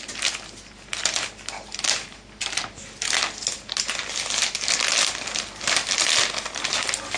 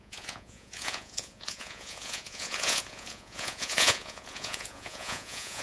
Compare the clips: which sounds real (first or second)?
first